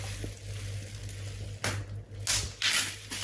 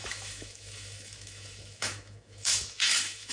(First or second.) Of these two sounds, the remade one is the second